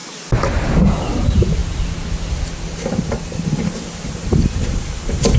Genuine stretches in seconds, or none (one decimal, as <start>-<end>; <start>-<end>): 0.0-5.4